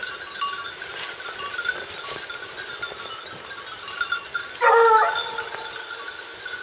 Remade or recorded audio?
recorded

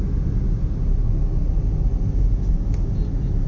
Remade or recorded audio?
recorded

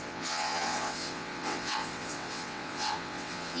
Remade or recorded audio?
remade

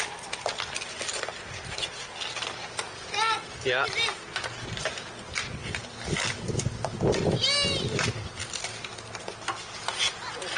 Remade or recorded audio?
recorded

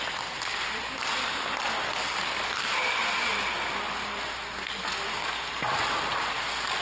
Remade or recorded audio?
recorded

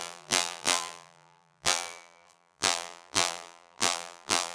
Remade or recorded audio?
remade